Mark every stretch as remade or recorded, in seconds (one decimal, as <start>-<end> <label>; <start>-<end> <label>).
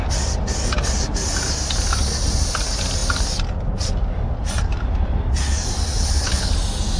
0.0-6.0 recorded; 6.0-6.5 remade; 6.5-7.0 recorded